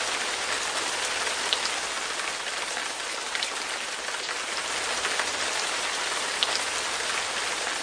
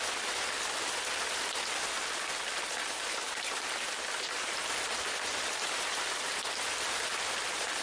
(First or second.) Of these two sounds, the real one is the first